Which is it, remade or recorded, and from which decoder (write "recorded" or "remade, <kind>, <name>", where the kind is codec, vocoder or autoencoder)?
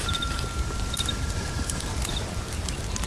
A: remade, vocoder, BigVGAN v2